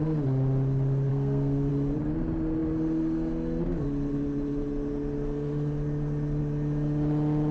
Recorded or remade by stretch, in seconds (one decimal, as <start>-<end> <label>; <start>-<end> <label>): 0.0-1.1 recorded; 1.1-1.7 remade; 1.7-7.5 recorded